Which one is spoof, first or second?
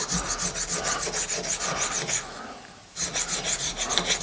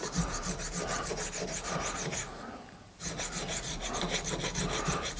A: second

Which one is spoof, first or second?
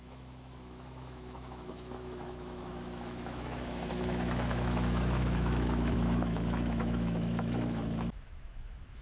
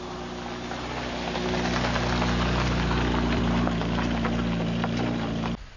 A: first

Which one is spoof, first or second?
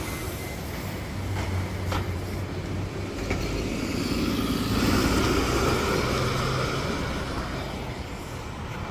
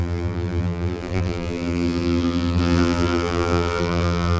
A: second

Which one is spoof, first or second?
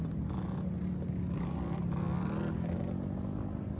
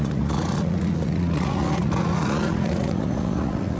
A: second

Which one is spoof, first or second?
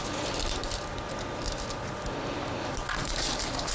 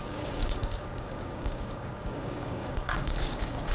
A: second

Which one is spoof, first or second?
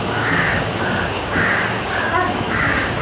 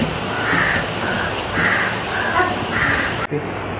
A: first